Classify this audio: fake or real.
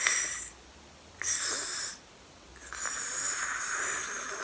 real